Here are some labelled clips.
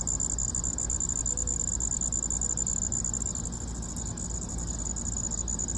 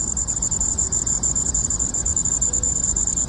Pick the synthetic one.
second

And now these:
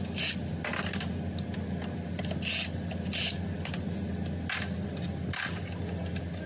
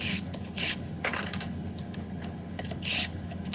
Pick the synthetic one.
second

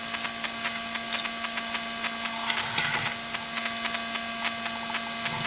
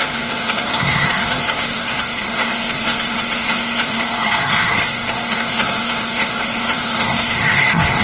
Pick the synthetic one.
second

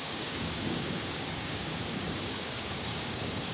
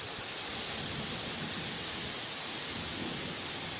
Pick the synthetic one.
first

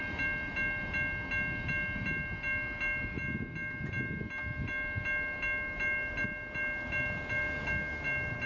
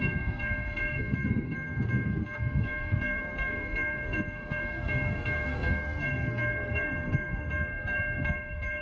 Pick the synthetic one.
second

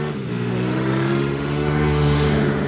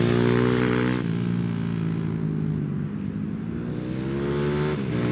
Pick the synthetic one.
first